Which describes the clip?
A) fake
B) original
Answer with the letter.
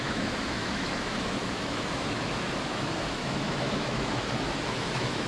A